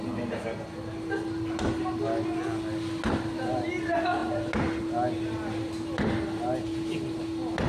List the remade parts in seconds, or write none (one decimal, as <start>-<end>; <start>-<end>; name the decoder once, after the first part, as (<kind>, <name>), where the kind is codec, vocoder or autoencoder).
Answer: none